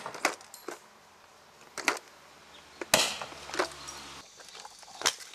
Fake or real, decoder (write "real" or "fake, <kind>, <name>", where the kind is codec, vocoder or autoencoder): real